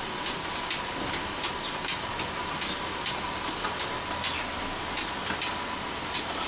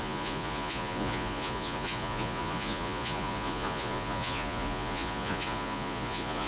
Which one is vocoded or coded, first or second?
second